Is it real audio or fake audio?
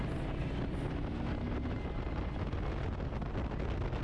real